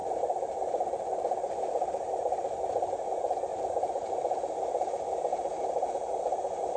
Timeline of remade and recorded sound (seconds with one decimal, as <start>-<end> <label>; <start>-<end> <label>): 0.0-2.9 remade; 2.9-3.5 recorded; 3.5-4.1 remade; 4.1-5.3 recorded; 5.3-6.8 remade